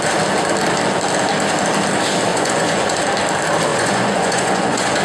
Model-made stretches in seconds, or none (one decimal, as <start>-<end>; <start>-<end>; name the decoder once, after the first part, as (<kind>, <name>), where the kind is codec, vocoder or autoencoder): 2.3-2.9 (vocoder, Vocos); 3.7-5.0